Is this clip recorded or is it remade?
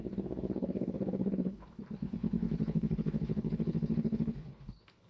remade